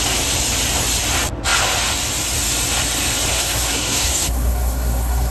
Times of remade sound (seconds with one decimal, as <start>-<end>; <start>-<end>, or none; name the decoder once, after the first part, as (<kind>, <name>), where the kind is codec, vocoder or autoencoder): 3.3-5.3 (codec, SNAC)

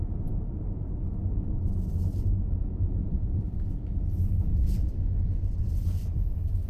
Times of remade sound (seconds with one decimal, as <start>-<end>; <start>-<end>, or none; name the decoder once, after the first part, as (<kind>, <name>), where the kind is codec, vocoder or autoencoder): 3.0-6.7 (vocoder, BigVGAN v2)

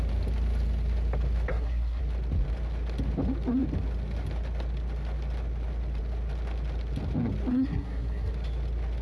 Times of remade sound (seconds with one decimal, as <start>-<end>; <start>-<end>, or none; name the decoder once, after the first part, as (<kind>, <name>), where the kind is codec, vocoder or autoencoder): 1.5-2.0 (codec, SNAC); 7.5-8.3

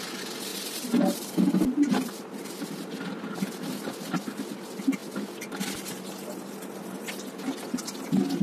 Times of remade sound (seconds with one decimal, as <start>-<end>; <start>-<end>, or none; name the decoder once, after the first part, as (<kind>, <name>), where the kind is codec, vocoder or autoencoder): 0.5-3.0 (vocoder, BigVGAN v2)